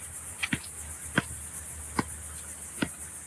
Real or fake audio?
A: real